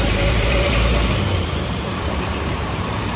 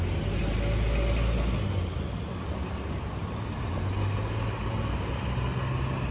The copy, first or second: first